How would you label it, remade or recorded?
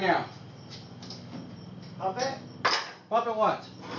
recorded